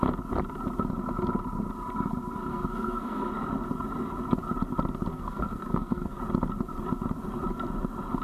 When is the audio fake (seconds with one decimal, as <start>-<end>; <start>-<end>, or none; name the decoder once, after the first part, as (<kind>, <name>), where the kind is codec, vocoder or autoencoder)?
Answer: 2.5-3.3 (codec, SNAC); 5.1-6.2